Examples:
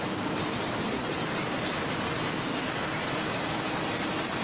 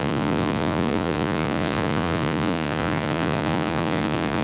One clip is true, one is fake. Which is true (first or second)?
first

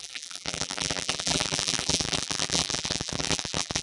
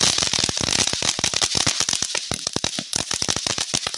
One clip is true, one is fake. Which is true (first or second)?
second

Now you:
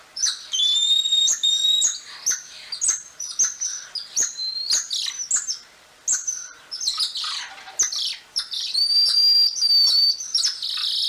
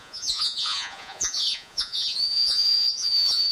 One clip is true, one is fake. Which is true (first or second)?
first